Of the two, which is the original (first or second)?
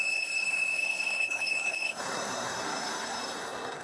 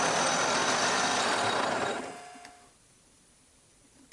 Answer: second